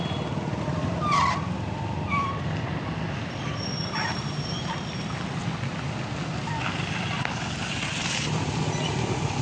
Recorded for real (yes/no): yes